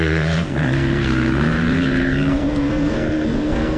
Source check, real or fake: fake